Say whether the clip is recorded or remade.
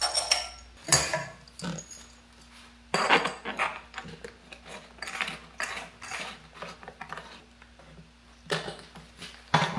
recorded